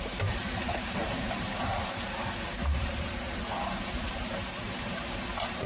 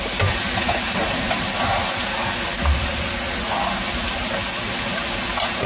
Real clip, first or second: second